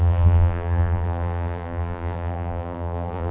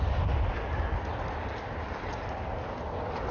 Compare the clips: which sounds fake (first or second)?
first